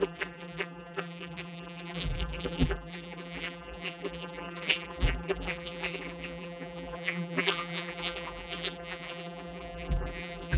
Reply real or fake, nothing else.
fake